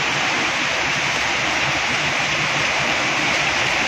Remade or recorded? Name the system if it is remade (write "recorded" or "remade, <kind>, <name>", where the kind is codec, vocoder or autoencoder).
remade, vocoder, BigVGAN v2